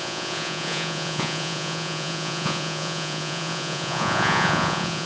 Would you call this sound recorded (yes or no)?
no